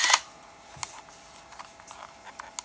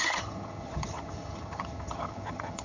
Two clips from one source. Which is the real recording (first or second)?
first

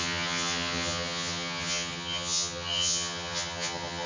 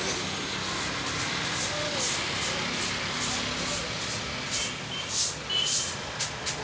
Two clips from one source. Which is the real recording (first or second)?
second